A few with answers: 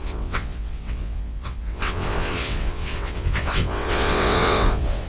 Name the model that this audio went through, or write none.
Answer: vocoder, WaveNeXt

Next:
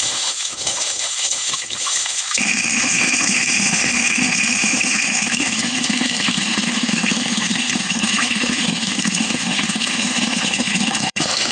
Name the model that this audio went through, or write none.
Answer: autoencoder, DAC-VAE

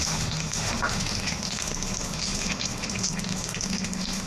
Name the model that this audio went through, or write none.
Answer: autoencoder, DAC-VAE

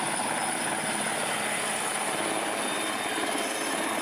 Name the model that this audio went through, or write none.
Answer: none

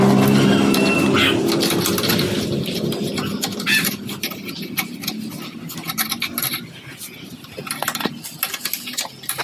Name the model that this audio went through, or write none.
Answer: none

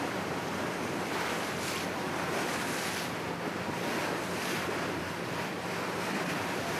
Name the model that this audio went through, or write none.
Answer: vocoder, BigVGAN v2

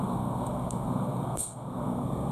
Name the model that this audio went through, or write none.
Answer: codec, SNAC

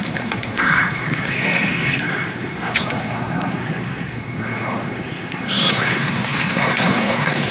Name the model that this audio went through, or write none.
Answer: codec, SNAC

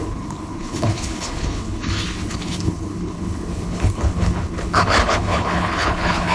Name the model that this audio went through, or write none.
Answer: codec, HILCodec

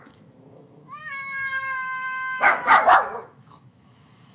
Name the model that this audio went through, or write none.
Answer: autoencoder, DAC-VAE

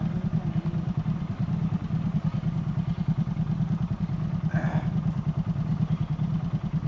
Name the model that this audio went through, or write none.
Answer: none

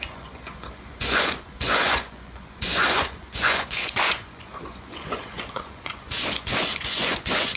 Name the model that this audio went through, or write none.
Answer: vocoder, Vocos